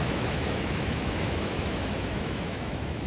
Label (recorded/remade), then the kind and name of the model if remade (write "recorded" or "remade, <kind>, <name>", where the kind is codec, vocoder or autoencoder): remade, autoencoder, DAC-VAE